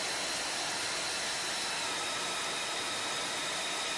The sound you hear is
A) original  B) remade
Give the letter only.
A